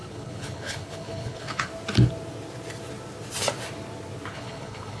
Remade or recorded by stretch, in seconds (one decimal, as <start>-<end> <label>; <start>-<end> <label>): 0.0-1.7 remade; 1.7-4.3 recorded; 4.3-5.0 remade